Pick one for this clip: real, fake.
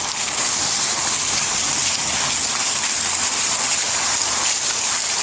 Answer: real